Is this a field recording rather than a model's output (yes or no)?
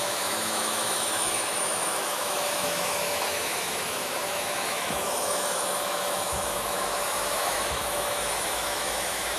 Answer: no